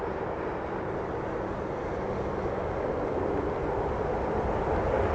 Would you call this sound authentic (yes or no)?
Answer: yes